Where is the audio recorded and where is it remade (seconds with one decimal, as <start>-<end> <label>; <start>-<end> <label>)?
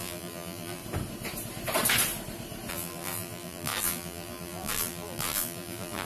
0.0-0.8 remade; 0.8-2.7 recorded; 2.7-6.0 remade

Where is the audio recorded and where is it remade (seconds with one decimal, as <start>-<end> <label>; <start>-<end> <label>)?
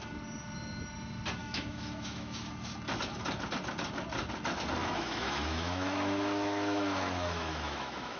0.0-1.4 recorded; 1.4-2.5 remade; 2.5-4.8 recorded; 4.8-8.2 remade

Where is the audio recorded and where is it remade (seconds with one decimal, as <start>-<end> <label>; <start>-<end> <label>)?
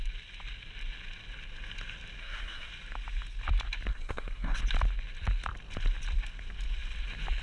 0.0-2.2 recorded; 2.2-2.7 remade; 2.7-3.9 recorded; 3.9-4.6 remade; 4.6-7.4 recorded